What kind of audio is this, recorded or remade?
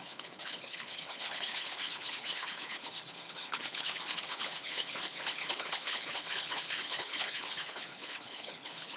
remade